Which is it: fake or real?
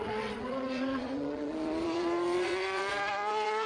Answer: fake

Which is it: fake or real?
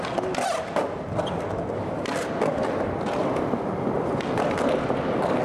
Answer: real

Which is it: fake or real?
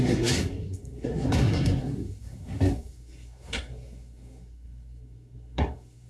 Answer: fake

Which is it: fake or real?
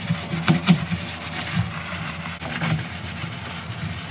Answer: fake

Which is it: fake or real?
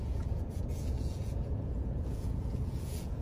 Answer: fake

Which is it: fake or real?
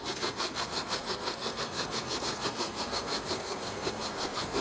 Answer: fake